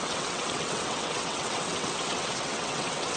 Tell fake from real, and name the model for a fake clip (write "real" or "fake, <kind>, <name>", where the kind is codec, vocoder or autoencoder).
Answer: fake, vocoder, WaveNeXt